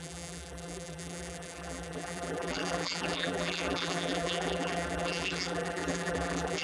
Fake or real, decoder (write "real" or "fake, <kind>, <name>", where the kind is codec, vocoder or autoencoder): fake, vocoder, BigVGAN v2